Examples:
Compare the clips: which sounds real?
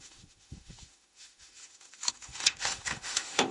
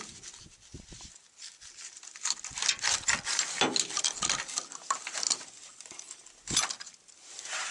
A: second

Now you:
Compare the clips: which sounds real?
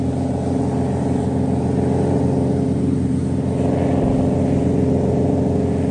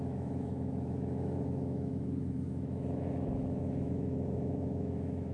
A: first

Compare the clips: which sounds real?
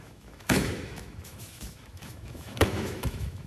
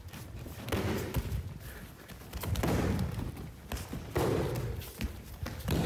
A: second